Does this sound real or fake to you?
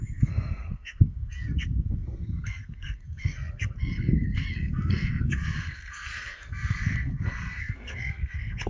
fake